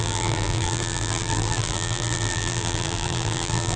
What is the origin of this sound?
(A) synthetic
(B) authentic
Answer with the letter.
A